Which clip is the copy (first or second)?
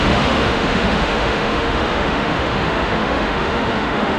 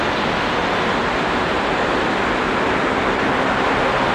first